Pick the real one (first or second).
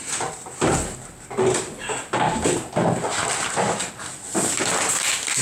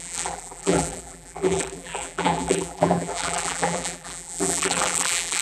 first